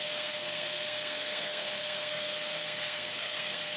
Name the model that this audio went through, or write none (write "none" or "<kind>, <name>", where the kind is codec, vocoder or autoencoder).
codec, SNAC